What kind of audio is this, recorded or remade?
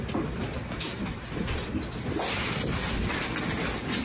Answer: recorded